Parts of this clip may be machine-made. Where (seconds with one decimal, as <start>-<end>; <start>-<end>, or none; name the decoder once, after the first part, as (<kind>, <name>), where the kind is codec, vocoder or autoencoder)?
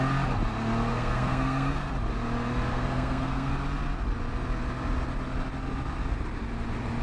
0.9-1.9 (codec, SNAC); 2.7-3.5